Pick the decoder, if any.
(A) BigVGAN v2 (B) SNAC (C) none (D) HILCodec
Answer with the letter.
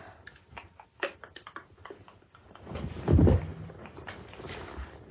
A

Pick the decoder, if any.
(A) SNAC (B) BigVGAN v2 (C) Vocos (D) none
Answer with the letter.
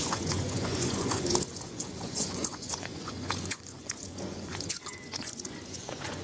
C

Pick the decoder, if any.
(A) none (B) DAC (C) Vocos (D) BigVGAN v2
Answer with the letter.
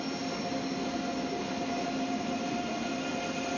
A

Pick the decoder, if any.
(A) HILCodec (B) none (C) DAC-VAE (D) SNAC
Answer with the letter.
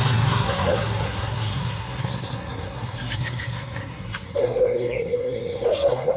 D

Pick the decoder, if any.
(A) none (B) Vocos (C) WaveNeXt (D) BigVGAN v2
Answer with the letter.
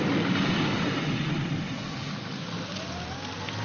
A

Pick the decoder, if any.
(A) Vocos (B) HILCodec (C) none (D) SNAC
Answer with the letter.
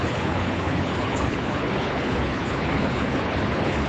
B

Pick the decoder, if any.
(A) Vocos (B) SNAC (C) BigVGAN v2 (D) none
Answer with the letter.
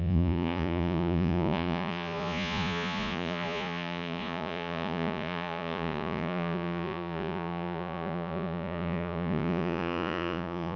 A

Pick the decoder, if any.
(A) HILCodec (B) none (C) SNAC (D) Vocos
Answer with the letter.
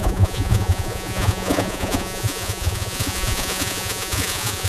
D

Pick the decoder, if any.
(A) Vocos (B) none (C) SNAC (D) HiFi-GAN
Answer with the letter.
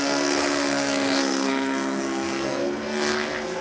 C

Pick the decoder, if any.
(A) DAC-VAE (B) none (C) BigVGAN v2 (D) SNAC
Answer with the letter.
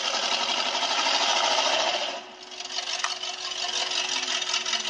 B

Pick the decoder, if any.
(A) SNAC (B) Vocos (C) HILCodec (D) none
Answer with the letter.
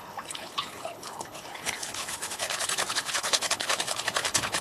C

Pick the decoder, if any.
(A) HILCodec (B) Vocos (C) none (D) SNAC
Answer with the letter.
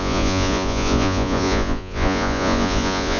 B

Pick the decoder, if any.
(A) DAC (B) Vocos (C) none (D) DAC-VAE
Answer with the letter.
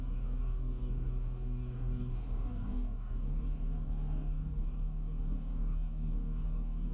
A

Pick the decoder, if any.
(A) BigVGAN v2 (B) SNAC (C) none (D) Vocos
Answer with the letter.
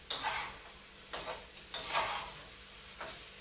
C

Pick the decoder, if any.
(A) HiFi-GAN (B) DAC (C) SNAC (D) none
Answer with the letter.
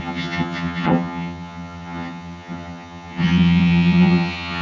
A